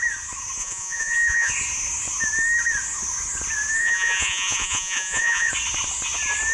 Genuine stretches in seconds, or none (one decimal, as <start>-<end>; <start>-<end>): 0.0-0.6; 1.5-3.8; 5.5-6.5